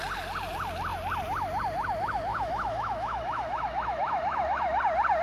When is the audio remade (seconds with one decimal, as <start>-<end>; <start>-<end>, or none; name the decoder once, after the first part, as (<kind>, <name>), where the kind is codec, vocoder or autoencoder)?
2.3-4.8 (autoencoder, DAC-VAE)